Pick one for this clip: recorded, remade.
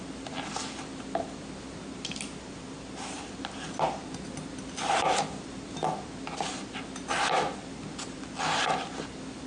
recorded